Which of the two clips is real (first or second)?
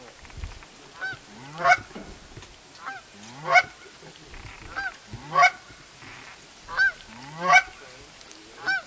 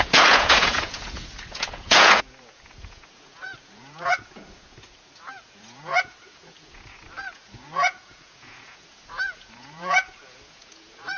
first